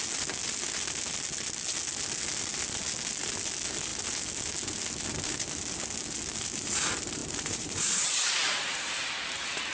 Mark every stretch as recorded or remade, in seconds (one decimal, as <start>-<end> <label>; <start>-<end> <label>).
0.0-7.2 recorded; 7.2-9.1 remade; 9.1-9.7 recorded